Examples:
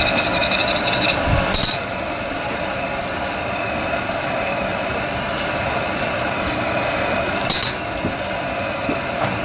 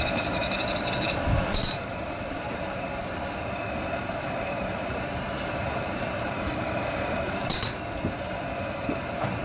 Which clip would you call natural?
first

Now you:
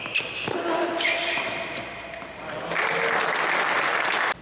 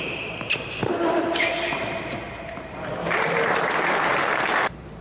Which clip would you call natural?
first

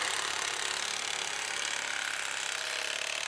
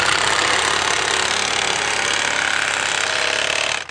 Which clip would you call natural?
second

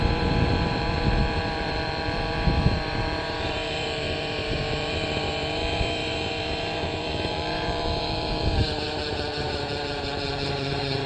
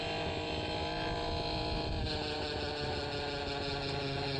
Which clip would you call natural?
second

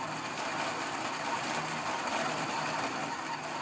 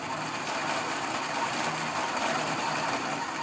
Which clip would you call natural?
first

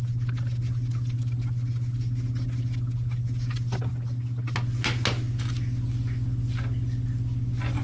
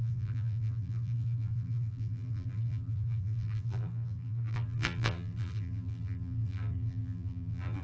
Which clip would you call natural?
first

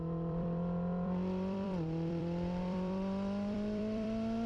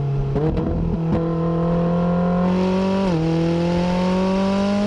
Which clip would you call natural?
second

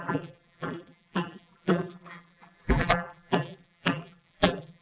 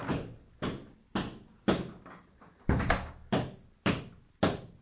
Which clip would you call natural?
second